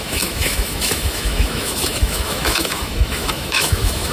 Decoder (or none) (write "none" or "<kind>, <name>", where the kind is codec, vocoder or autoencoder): autoencoder, DAC-VAE